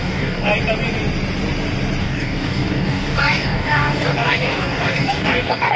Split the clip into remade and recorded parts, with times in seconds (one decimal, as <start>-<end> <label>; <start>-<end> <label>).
0.0-0.5 remade; 0.5-2.0 recorded; 2.0-5.8 remade